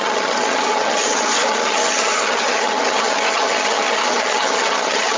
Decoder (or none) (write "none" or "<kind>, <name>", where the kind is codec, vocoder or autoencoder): vocoder, HiFi-GAN